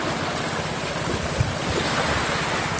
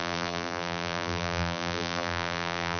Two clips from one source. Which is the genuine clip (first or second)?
first